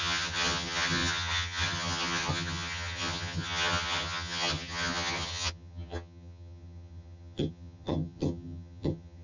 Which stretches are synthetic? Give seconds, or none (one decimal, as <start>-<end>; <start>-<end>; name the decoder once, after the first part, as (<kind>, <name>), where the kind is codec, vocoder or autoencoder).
0.0-9.2 (vocoder, HiFi-GAN)